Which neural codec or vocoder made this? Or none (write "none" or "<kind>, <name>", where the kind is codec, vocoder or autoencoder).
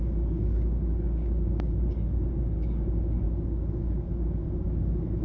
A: codec, DAC